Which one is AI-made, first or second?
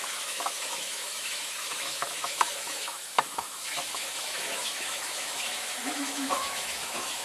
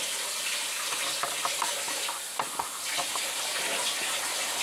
first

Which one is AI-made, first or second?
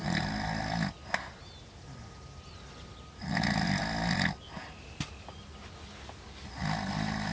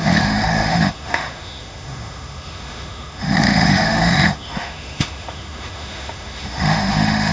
second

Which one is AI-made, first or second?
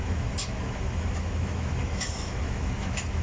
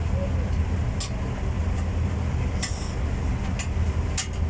first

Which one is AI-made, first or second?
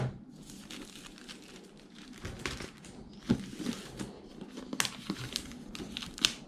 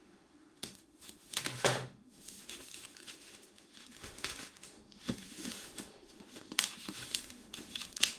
second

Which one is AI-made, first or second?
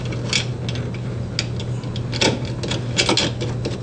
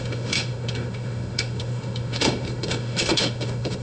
second